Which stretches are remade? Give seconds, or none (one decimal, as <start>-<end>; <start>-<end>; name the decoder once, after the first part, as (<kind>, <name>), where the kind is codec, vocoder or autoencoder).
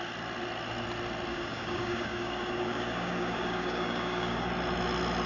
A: 1.3-4.5 (codec, DAC)